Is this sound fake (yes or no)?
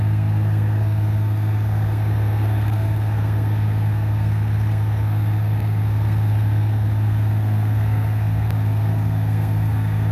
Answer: yes